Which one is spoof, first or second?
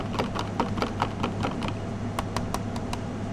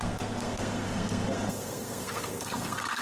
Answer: second